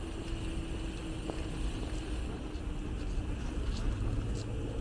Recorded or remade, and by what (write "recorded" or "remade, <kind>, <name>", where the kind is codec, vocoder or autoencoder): recorded